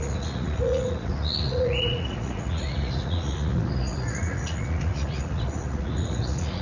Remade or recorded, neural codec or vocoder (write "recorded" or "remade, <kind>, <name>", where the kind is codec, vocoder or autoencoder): remade, vocoder, Vocos